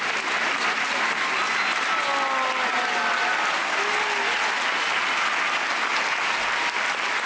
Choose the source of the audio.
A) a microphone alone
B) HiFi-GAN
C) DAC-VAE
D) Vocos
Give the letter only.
A